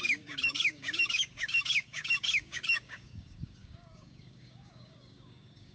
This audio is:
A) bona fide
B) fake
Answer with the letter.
B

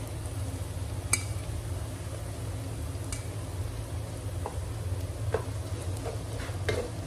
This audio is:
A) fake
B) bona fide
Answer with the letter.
B